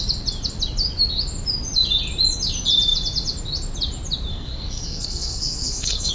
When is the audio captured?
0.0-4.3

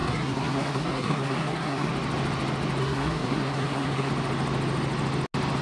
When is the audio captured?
1.9-2.8; 4.1-5.6

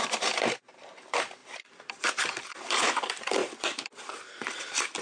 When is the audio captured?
0.0-5.0

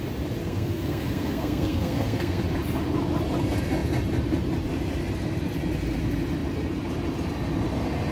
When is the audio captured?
0.0-0.4; 2.4-8.1

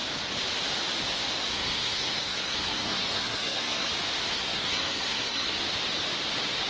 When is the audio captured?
0.0-1.5; 3.9-4.3; 5.6-6.7

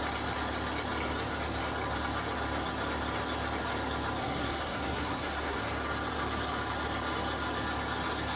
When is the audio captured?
0.0-4.2; 5.6-8.4